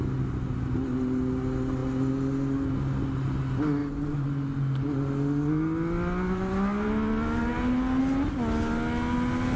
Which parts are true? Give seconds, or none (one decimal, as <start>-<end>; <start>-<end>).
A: 0.0-9.6